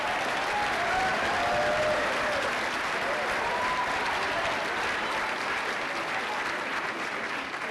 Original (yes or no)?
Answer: yes